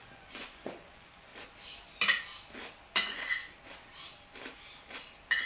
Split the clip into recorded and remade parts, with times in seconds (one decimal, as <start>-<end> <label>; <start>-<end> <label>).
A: 0.0-1.3 remade; 1.3-2.9 recorded; 2.9-3.4 remade; 3.4-5.5 recorded